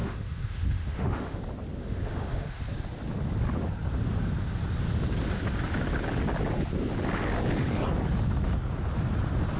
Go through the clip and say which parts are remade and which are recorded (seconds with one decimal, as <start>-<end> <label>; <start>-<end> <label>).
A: 0.0-1.4 remade; 1.4-1.8 recorded; 1.8-2.6 remade; 2.6-9.6 recorded